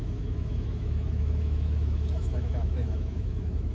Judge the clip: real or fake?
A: fake